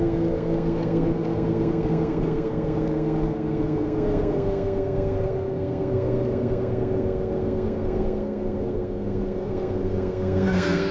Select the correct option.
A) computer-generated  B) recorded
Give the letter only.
A